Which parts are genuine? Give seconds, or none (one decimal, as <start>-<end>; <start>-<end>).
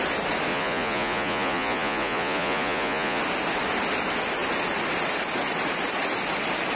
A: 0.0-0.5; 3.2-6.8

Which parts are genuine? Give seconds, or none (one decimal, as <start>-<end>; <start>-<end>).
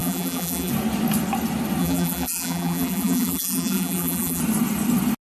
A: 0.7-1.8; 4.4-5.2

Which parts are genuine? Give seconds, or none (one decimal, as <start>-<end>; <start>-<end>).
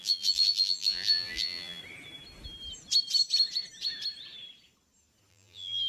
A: 1.8-5.3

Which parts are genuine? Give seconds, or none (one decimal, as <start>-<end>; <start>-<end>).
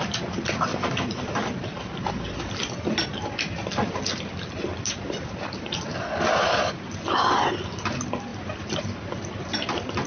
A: 0.0-10.1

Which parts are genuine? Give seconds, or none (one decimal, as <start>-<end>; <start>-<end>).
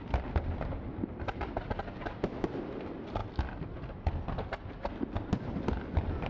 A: 0.0-6.3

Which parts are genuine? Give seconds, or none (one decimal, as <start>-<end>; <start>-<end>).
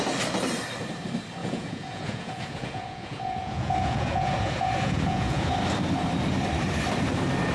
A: 0.0-1.4; 5.5-7.5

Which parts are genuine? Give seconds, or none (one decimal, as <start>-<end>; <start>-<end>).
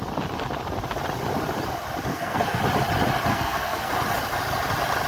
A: 0.0-2.1; 2.6-3.3; 3.9-5.1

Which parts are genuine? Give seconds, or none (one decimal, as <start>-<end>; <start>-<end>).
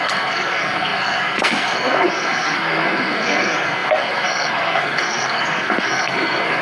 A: none